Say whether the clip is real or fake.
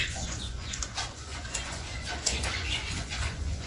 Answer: fake